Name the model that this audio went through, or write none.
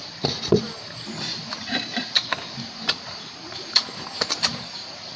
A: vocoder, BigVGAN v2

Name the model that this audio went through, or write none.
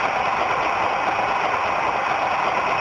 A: none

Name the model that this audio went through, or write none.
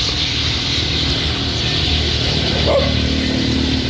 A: none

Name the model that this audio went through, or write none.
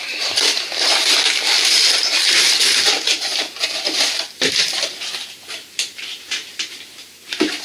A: vocoder, BigVGAN v2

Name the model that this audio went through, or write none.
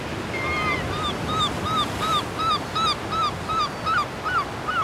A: none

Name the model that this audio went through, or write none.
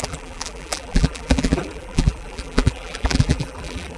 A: vocoder, BigVGAN v2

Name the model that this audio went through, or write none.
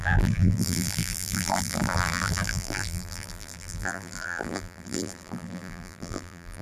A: vocoder, BigVGAN v2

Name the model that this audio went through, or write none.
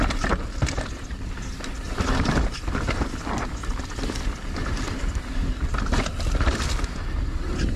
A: none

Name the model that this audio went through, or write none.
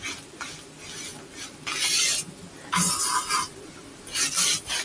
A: none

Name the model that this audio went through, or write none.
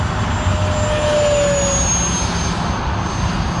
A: none